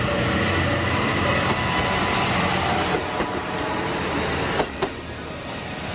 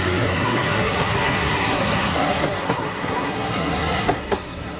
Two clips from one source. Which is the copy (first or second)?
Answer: second